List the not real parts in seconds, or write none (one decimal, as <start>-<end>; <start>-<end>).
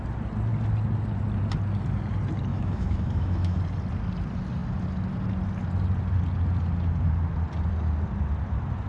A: 2.5-3.6